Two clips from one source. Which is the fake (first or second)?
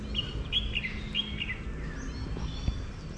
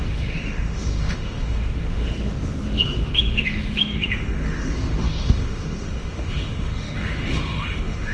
second